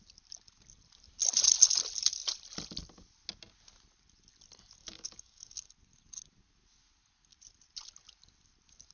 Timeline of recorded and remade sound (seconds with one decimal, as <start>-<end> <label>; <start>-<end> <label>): 0.0-4.8 recorded; 4.8-5.7 remade; 5.7-8.9 recorded